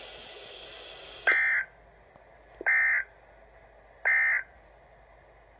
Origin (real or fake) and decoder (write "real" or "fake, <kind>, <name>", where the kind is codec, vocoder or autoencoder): real